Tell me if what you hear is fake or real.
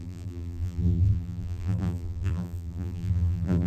fake